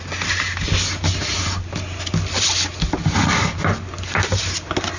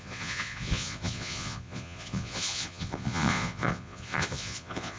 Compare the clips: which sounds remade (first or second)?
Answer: second